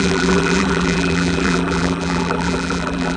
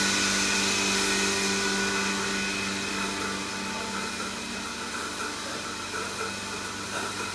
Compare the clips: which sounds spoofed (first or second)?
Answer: first